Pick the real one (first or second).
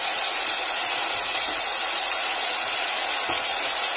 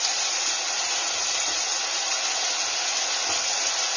second